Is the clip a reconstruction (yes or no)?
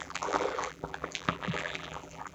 yes